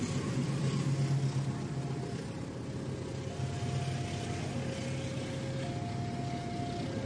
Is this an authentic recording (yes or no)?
yes